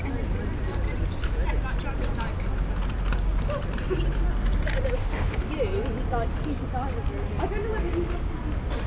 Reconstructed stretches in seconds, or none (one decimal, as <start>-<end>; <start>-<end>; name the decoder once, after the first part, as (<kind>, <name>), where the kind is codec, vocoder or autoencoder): 5.0-5.5 (autoencoder, DAC-VAE)